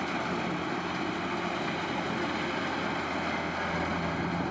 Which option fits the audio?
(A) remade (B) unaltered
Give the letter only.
B